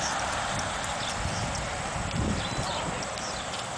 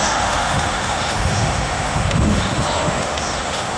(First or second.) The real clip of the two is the first